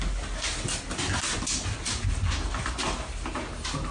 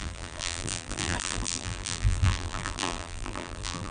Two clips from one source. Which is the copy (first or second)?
second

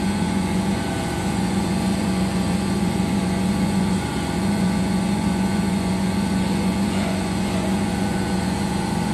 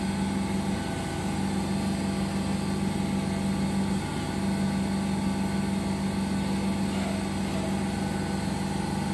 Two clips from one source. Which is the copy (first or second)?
first